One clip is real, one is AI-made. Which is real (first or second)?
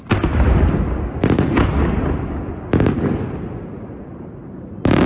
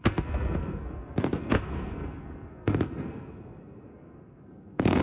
first